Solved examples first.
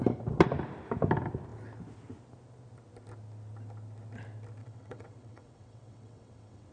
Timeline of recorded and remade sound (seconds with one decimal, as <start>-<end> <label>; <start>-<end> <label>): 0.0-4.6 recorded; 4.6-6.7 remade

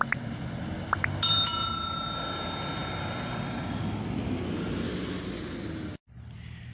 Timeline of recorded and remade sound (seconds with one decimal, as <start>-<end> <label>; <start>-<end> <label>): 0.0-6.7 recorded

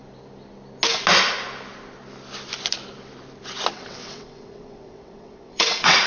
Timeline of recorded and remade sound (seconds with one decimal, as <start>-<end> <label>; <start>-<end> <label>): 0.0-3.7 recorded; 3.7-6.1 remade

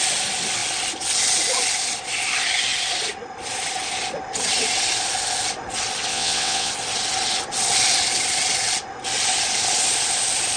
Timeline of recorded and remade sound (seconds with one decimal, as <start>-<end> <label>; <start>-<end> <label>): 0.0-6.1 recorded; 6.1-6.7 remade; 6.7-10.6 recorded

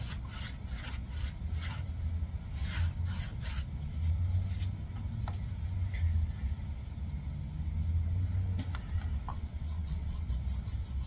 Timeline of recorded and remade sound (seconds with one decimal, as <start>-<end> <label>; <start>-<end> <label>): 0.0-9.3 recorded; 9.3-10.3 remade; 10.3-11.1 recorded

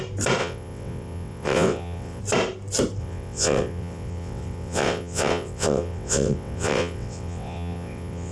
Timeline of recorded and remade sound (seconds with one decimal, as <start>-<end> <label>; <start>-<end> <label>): 0.0-0.4 recorded; 0.4-2.2 remade; 2.2-3.0 recorded; 3.0-8.3 remade

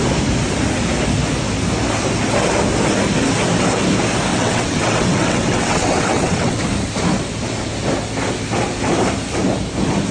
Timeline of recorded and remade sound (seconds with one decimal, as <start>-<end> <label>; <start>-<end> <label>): 0.0-4.3 recorded; 4.3-6.6 remade; 6.6-10.1 recorded